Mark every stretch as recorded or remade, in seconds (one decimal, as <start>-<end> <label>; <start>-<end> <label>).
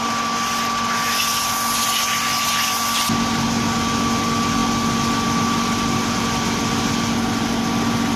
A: 0.0-8.2 recorded